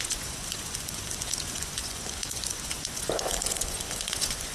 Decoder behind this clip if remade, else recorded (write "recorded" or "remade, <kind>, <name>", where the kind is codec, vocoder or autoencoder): remade, vocoder, Vocos